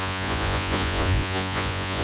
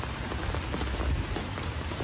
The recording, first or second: second